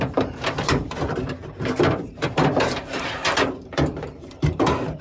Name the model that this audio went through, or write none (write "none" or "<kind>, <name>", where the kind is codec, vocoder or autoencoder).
vocoder, BigVGAN v2